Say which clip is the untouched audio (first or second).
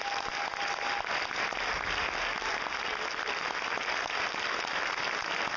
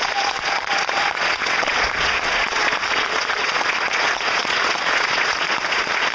first